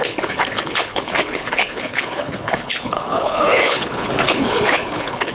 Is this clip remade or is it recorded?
remade